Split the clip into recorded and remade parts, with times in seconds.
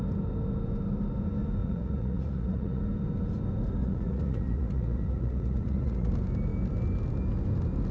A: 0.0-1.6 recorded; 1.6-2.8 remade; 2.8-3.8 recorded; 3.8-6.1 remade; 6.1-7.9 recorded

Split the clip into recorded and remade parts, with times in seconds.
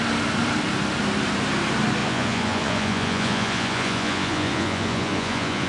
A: 0.0-2.0 recorded; 2.0-5.7 remade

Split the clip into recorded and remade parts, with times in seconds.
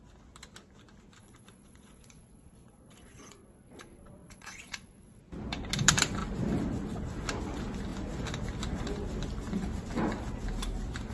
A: 0.0-1.2 recorded; 1.2-5.2 remade; 5.2-11.1 recorded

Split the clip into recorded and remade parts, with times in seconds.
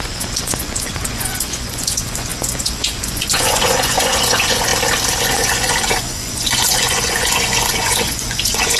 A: 0.0-4.7 remade; 4.7-5.2 recorded; 5.2-8.8 remade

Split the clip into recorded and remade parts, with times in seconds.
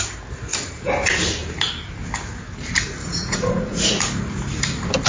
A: 0.0-3.0 recorded; 3.0-3.9 remade; 3.9-5.1 recorded